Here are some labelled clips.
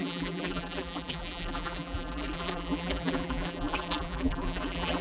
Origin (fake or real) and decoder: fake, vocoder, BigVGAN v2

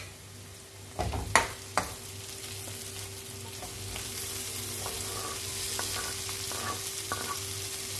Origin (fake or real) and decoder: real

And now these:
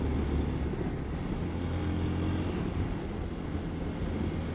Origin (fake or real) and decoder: real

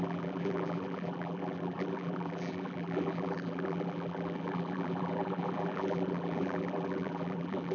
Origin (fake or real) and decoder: fake, vocoder, BigVGAN v2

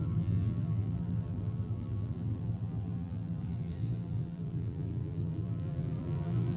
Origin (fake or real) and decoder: fake, vocoder, BigVGAN v2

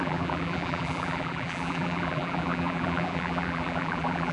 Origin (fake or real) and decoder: fake, vocoder, BigVGAN v2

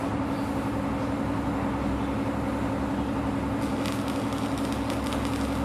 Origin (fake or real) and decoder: real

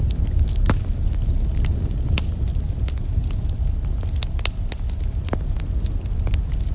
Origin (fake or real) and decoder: real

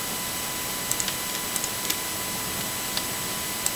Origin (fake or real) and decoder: real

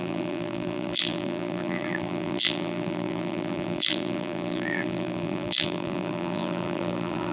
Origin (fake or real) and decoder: fake, vocoder, BigVGAN v2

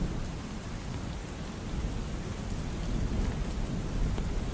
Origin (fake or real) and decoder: real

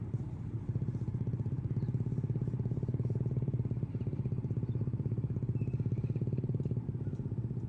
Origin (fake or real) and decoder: fake, vocoder, BigVGAN v2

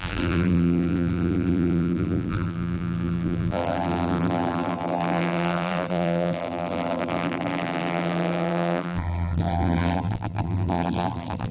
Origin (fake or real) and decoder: fake, vocoder, BigVGAN v2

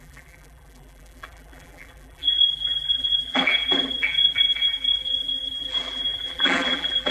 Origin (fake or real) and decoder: fake, vocoder, BigVGAN v2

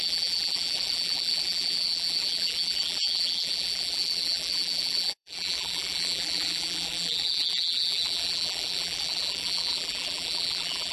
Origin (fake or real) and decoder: fake, vocoder, BigVGAN v2